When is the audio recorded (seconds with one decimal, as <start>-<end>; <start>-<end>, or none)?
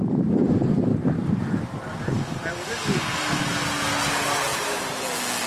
0.0-0.9; 2.4-4.5; 5.0-5.5